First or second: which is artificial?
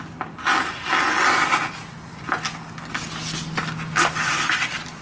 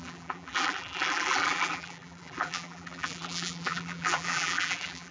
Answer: second